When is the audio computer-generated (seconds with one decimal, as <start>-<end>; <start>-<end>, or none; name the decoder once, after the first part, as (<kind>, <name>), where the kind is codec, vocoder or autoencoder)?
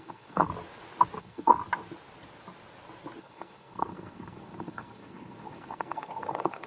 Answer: 0.0-0.5 (codec, SNAC); 1.2-1.6; 3.2-6.7